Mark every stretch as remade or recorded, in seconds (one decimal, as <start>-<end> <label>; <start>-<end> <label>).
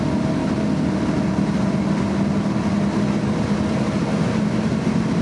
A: 0.0-5.2 recorded